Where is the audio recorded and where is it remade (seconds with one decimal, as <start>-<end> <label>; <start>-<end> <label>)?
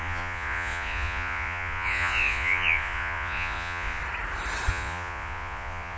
0.0-4.0 remade; 4.0-4.7 recorded; 4.7-6.0 remade